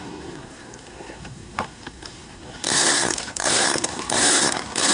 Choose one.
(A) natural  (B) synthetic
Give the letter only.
B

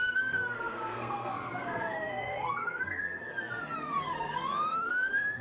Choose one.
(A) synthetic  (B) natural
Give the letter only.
A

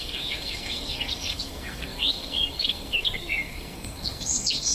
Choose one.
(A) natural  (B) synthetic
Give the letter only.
B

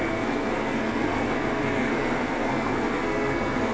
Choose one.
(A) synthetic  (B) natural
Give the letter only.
A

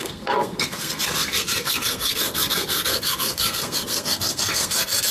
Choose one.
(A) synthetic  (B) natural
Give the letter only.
A